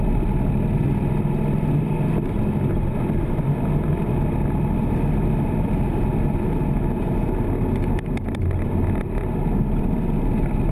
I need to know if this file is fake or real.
real